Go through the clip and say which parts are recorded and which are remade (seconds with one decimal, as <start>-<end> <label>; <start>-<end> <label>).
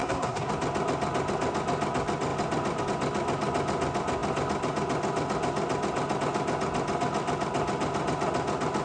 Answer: 0.0-0.5 remade; 0.5-8.8 recorded